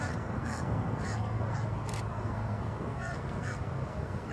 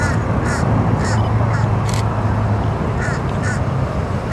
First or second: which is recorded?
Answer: second